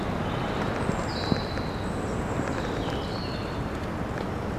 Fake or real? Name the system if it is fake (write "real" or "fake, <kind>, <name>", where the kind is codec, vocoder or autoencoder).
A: real